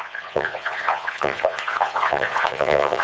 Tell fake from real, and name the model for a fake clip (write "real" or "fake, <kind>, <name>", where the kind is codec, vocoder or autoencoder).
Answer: fake, vocoder, Vocos